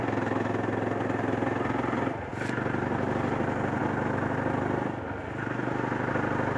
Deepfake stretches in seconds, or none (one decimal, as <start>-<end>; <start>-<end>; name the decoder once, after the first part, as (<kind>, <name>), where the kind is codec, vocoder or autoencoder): none